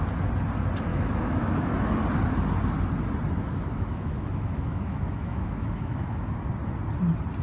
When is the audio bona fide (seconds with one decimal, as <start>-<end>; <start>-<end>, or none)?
0.0-0.9; 1.7-3.4; 6.4-7.4